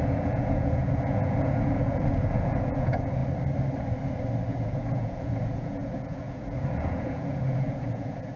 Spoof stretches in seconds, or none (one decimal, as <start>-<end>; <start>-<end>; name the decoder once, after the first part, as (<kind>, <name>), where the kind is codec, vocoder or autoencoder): 0.0-3.2 (vocoder, Vocos); 4.5-8.4